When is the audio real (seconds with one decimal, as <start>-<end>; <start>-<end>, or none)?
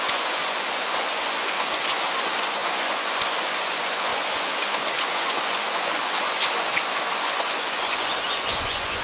none